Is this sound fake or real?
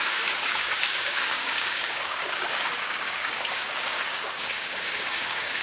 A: fake